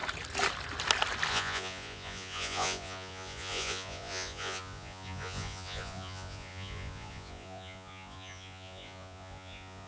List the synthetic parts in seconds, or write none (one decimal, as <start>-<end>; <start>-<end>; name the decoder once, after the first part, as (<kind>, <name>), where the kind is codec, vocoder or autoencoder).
1.3-9.9 (vocoder, Vocos)